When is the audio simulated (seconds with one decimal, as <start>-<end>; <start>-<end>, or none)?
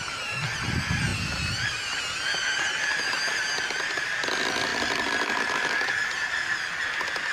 1.1-2.0; 4.7-5.4